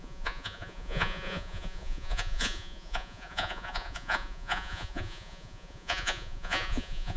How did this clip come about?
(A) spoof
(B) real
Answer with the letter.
A